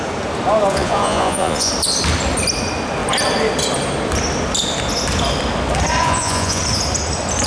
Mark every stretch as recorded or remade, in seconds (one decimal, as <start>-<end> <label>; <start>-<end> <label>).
0.0-0.7 recorded; 0.7-1.7 remade; 1.7-6.0 recorded; 6.0-6.6 remade; 6.6-7.5 recorded